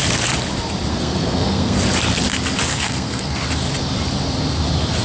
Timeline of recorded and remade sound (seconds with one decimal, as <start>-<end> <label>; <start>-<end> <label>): 0.0-0.9 recorded; 0.9-1.8 remade; 1.8-2.7 recorded; 2.7-3.4 remade; 3.4-5.0 recorded

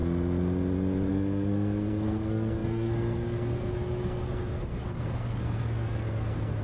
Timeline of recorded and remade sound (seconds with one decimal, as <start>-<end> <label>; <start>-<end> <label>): 0.0-1.1 recorded; 1.1-6.6 remade

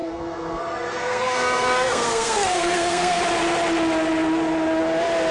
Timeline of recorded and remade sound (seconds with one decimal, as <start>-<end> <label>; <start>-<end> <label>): 0.0-3.2 remade; 3.2-5.3 recorded

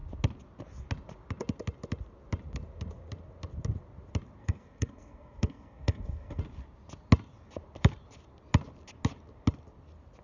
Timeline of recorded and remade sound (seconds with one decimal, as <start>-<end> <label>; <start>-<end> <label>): 0.0-4.4 recorded; 4.4-6.4 remade; 6.4-10.2 recorded

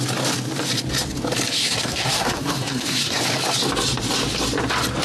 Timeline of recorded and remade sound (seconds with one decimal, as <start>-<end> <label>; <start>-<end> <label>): 0.0-1.6 recorded; 1.6-3.2 remade; 3.2-5.0 recorded

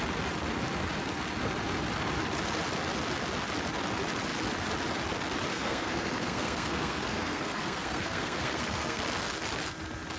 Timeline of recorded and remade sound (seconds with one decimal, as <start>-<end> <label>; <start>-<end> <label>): 0.0-5.5 recorded; 5.5-9.0 remade; 9.0-10.2 recorded

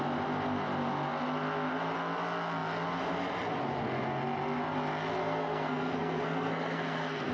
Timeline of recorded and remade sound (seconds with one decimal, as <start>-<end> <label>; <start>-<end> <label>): 0.0-5.2 recorded; 5.2-7.3 remade

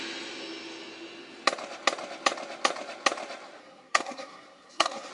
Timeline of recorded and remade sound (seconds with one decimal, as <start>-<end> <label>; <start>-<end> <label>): 0.0-3.6 recorded; 3.6-5.1 remade